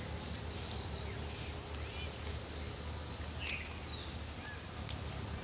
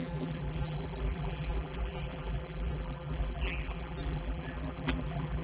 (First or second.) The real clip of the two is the first